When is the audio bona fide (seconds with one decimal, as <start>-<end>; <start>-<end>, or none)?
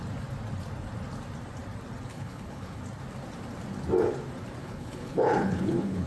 0.0-2.1; 2.8-4.6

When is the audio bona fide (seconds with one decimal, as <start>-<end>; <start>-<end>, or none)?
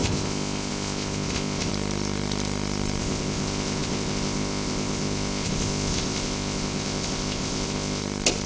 1.7-3.0; 8.0-8.5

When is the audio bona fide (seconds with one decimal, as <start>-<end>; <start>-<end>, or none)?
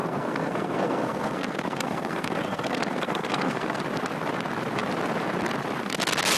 3.8-6.4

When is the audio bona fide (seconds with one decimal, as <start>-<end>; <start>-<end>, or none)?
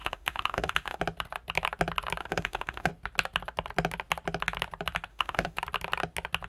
1.0-2.2; 2.9-5.1; 5.6-6.5